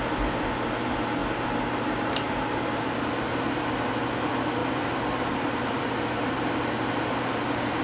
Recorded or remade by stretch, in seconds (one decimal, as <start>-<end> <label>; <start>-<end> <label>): 0.0-4.6 recorded; 4.6-5.8 remade; 5.8-7.8 recorded